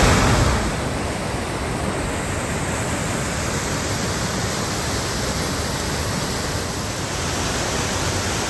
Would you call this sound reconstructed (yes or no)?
no